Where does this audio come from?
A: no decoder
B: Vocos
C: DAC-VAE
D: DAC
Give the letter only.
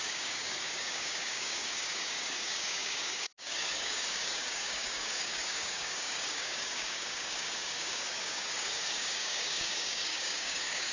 D